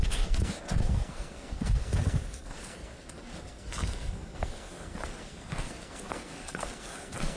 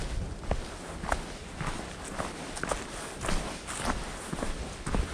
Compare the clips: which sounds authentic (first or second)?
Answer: second